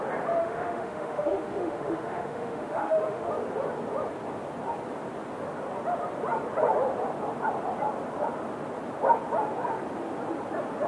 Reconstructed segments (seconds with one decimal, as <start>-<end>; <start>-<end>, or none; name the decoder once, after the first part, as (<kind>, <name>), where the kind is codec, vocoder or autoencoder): 0.4-3.3 (autoencoder, DAC-VAE)